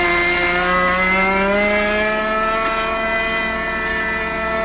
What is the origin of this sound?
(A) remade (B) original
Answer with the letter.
B